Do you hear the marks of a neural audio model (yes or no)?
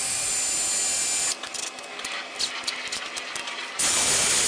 no